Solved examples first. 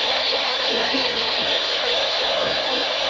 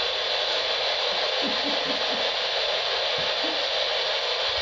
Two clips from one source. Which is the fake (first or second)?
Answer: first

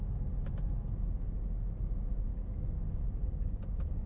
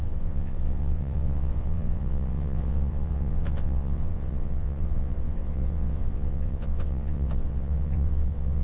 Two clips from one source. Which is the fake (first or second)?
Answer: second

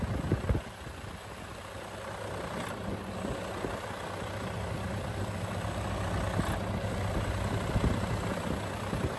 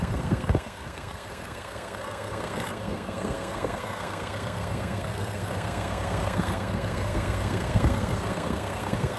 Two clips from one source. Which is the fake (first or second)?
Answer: second